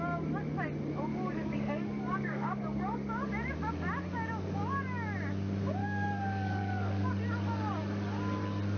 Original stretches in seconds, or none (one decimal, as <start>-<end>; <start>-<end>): 0.0-1.1; 3.3-5.8; 7.1-8.8